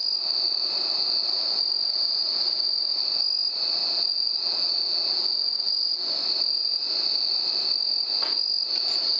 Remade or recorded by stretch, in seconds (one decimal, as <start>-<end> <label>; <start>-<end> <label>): 0.0-3.8 recorded; 3.8-6.1 remade; 6.1-9.2 recorded

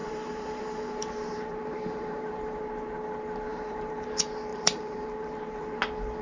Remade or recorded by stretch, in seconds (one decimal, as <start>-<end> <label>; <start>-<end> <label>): 0.0-2.6 remade; 2.6-3.5 recorded; 3.5-4.1 remade; 4.1-4.5 recorded; 4.5-5.8 remade; 5.8-6.2 recorded

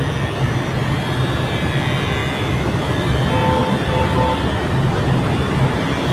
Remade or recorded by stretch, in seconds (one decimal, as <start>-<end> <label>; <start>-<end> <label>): 0.0-0.8 recorded; 0.8-1.7 remade; 1.7-6.1 recorded

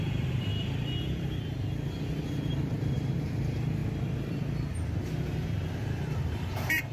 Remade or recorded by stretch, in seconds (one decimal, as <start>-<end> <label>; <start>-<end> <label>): 0.0-0.5 remade; 0.5-2.3 recorded; 2.3-3.8 remade; 3.8-6.4 recorded; 6.4-6.9 remade